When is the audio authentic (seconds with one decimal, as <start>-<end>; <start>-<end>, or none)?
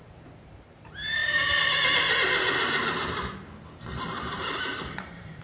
1.2-3.7